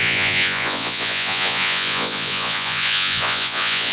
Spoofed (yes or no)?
yes